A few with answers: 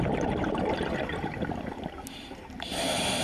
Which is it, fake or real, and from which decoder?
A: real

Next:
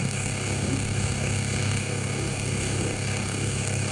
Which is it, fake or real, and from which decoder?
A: fake, codec, DAC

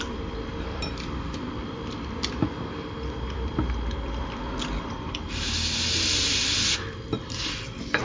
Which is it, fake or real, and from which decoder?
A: fake, vocoder, BigVGAN v2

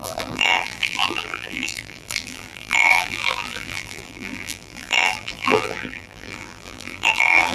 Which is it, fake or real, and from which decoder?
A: fake, vocoder, BigVGAN v2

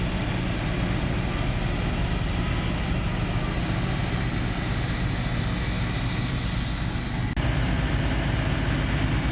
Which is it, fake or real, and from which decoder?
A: real